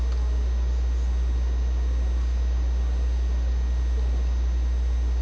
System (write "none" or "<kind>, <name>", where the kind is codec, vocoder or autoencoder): none